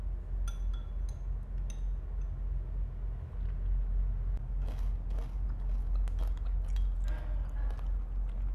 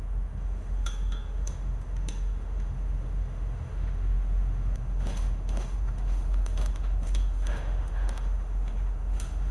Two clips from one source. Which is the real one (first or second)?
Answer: first